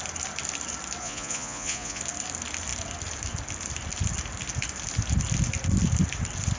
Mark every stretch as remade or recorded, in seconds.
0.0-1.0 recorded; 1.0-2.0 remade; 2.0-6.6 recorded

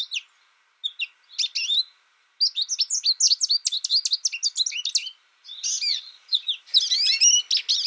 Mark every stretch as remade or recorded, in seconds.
0.0-5.9 recorded; 5.9-6.5 remade; 6.5-7.9 recorded

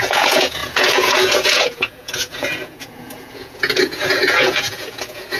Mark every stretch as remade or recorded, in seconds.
0.0-5.4 remade

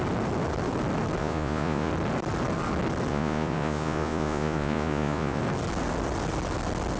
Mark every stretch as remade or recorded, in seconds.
0.0-1.2 recorded; 1.2-1.9 remade; 1.9-3.1 recorded; 3.1-5.4 remade; 5.4-7.0 recorded